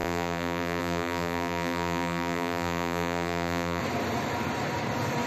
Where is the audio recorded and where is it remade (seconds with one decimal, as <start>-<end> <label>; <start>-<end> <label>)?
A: 0.0-3.8 remade; 3.8-5.3 recorded